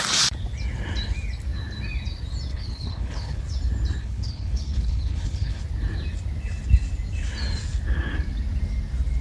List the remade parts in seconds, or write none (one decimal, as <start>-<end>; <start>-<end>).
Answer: 2.5-3.4; 4.0-5.6